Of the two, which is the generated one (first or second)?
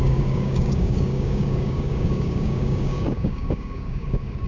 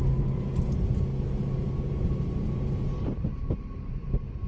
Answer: first